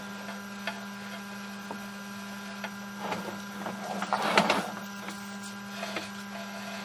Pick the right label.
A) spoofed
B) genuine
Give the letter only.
B